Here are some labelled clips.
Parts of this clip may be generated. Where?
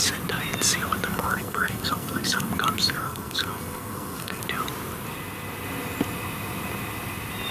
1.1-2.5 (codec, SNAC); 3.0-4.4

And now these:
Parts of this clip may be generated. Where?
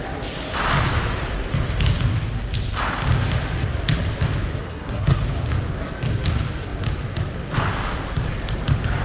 4.6-5.2 (codec, SNAC)